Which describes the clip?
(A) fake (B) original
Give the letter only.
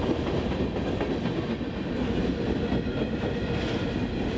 B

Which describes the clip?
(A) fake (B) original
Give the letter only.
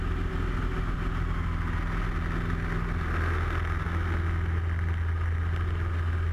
B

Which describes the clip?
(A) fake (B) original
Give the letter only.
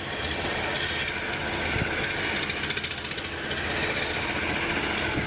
B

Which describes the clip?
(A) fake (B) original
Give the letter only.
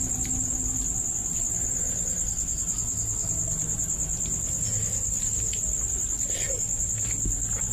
B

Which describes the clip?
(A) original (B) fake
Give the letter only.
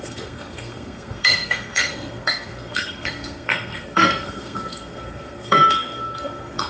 B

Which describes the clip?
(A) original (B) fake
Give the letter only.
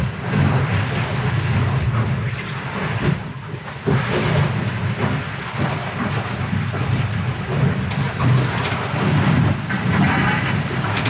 A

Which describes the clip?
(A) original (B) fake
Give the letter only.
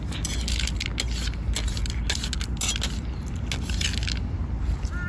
A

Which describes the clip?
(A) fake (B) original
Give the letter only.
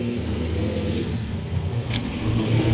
A